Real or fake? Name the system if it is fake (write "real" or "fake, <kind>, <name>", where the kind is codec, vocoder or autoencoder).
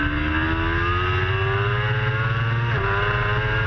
real